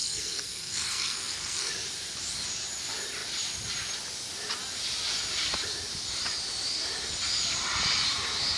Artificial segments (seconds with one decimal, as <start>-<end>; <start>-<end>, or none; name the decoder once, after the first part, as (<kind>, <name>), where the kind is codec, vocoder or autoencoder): 0.0-1.7 (codec, SNAC)